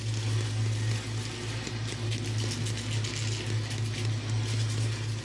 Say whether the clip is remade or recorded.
recorded